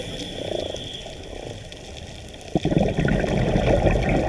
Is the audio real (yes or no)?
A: yes